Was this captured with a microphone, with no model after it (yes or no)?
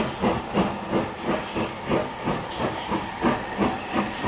yes